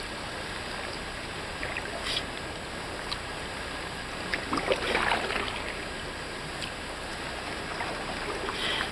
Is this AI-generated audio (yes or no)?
no